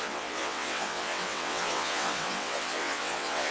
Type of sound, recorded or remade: remade